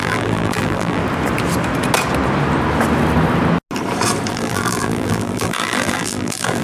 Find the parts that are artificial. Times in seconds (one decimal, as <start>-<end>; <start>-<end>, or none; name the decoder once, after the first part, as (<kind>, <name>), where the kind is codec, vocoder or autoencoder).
0.0-1.0 (vocoder, BigVGAN v2); 4.3-6.6